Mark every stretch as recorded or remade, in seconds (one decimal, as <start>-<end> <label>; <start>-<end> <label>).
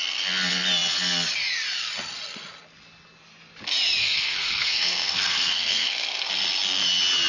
0.0-4.0 recorded; 4.0-6.3 remade; 6.3-7.3 recorded